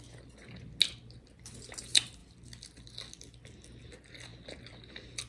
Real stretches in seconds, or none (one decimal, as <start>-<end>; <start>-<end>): 0.0-5.3